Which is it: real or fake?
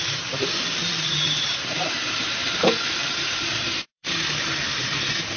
fake